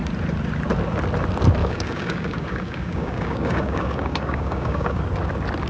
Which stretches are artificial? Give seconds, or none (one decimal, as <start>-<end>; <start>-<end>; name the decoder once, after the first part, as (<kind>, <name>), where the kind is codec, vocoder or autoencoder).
1.6-5.0 (codec, DAC)